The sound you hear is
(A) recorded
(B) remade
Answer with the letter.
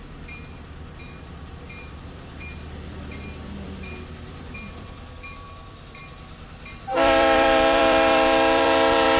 B